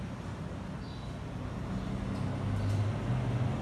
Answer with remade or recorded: recorded